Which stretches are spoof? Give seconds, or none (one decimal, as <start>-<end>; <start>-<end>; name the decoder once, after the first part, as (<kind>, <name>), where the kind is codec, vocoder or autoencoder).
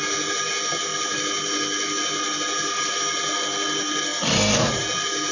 none